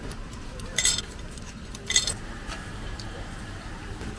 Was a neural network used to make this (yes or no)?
yes